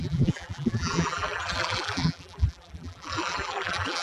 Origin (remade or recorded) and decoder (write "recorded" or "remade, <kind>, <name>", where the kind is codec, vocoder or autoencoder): remade, vocoder, BigVGAN v2